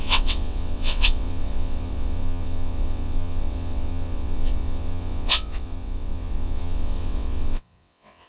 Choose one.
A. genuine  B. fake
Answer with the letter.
B